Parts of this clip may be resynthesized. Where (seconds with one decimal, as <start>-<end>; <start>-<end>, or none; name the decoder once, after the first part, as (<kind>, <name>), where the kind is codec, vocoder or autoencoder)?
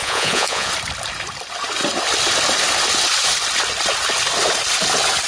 0.0-0.7 (vocoder, Vocos)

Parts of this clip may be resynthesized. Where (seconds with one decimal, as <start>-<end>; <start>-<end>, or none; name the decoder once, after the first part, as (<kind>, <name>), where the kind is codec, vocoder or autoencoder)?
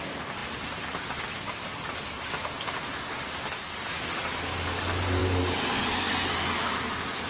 none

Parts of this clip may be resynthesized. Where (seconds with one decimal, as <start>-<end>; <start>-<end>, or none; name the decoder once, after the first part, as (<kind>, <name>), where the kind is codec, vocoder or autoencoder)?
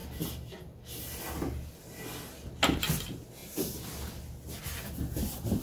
none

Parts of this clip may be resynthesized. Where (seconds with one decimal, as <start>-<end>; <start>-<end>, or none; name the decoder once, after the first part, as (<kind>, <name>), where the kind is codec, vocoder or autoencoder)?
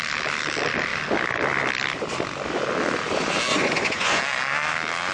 3.5-4.2 (vocoder, Vocos)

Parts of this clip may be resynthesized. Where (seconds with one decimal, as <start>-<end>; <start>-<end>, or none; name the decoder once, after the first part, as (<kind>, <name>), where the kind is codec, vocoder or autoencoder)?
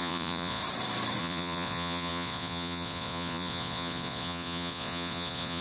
0.0-0.6 (vocoder, Vocos); 1.2-5.6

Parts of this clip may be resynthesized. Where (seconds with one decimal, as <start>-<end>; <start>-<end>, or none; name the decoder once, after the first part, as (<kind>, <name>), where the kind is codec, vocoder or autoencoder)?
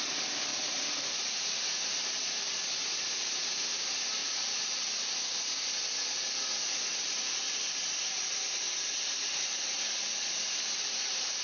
0.5-1.2 (vocoder, Vocos)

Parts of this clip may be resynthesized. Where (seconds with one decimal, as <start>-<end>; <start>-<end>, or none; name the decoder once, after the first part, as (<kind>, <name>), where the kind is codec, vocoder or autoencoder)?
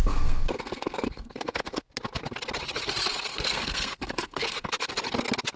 0.0-1.8 (codec, SNAC); 3.3-4.9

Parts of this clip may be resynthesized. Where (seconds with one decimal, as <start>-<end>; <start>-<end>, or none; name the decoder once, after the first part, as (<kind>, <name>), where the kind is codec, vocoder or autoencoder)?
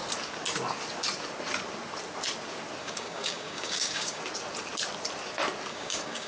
2.8-4.2 (codec, DAC); 5.7-6.3